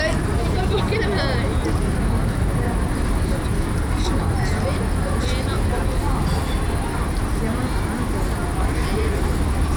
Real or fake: real